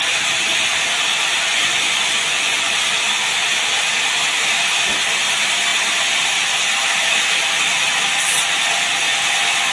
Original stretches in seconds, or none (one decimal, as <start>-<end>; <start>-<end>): 0.0-1.5; 2.7-9.7